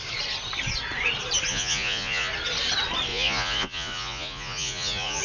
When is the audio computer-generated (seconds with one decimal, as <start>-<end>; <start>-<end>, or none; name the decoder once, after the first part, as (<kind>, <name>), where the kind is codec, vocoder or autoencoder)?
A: 1.5-2.3 (vocoder, Vocos); 3.1-5.2